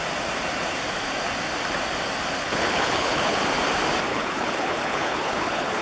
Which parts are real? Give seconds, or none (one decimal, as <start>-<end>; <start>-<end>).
0.0-2.4; 3.4-4.1